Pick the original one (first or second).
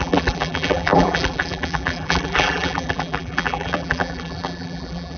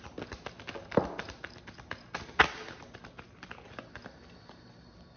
second